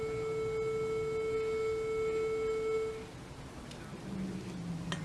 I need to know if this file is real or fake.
real